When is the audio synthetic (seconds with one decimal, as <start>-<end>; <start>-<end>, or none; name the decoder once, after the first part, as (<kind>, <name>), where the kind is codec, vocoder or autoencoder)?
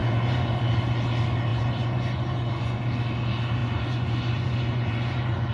0.0-0.6 (vocoder, Vocos); 1.5-2.8; 3.6-5.5